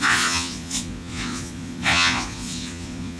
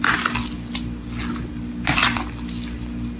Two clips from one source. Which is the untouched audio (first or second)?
second